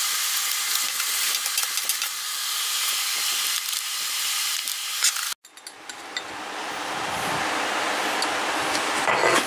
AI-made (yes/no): no